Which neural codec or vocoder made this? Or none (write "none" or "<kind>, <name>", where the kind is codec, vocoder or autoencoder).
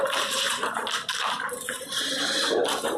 vocoder, BigVGAN v2